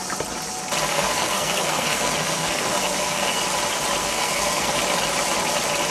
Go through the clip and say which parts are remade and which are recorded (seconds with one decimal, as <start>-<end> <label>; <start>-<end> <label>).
0.0-0.9 recorded; 0.9-3.4 remade; 3.4-4.0 recorded; 4.0-4.8 remade; 4.8-5.9 recorded